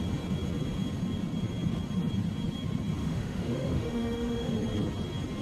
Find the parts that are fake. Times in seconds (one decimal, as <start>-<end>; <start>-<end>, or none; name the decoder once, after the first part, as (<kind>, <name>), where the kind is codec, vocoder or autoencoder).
3.0-4.5 (autoencoder, DAC-VAE)